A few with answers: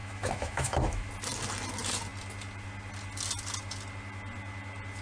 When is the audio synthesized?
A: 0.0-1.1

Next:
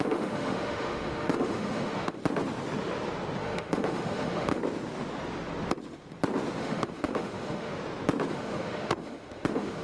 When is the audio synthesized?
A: 0.0-2.2; 3.4-4.6; 6.6-7.7; 8.3-9.8